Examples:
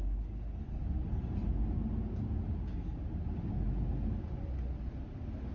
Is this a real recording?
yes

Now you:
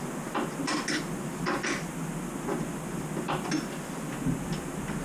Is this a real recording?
yes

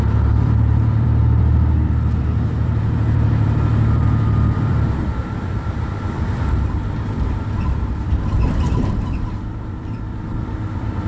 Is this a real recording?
no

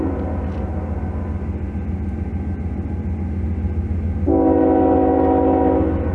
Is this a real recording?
yes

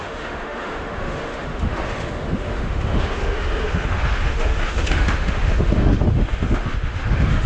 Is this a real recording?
no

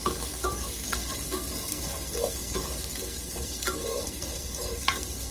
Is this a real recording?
no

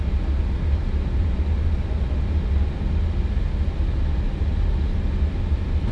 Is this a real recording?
yes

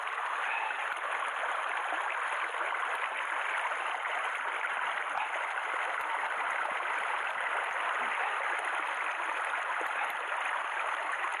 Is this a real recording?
yes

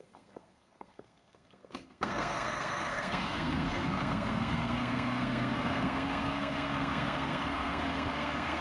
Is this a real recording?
no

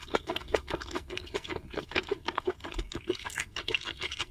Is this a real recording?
no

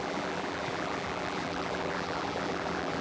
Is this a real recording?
no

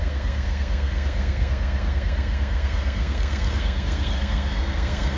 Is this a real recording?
no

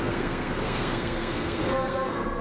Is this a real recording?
no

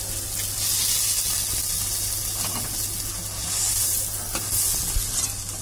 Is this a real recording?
yes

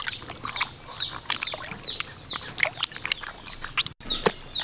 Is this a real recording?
yes